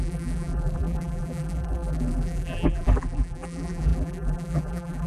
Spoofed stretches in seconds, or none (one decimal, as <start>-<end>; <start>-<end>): 0.0-5.1